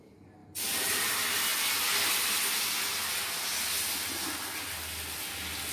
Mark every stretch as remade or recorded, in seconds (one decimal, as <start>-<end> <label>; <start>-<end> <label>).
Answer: 0.0-0.4 recorded; 0.4-1.1 remade; 1.1-5.7 recorded